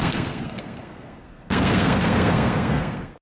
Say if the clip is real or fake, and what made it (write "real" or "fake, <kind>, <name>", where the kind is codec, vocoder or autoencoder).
fake, codec, SNAC